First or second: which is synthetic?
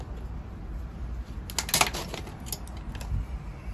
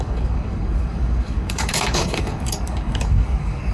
second